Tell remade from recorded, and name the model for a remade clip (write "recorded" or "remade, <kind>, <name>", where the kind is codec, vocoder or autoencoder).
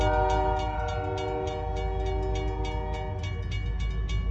recorded